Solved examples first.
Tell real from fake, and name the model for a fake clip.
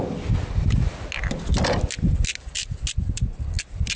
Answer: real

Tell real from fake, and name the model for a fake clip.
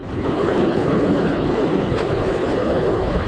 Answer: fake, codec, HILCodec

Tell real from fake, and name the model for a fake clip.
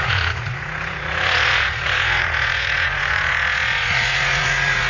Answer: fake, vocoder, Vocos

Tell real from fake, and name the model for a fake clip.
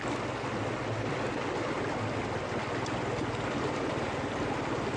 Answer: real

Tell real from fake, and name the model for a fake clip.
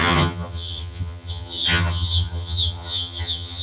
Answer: fake, vocoder, HiFi-GAN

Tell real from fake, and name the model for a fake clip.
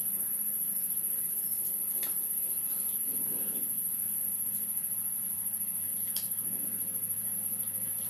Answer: real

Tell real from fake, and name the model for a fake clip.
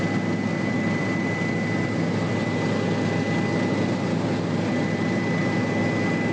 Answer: real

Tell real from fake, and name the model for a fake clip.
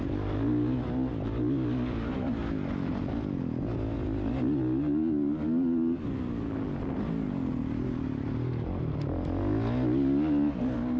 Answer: real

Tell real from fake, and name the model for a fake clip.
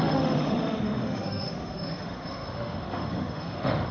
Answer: fake, autoencoder, DAC-VAE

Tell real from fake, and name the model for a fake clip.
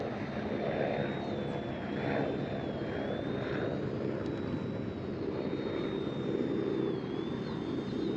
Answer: real